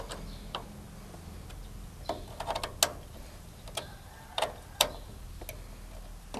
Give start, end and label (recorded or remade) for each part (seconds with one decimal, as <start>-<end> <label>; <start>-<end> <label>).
0.0-2.9 recorded; 2.9-5.4 remade; 5.4-6.4 recorded